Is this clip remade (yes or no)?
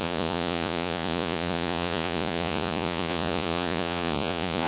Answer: yes